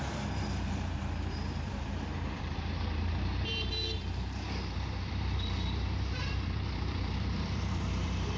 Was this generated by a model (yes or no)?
yes